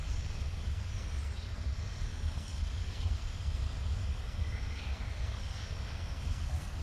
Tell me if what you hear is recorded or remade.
remade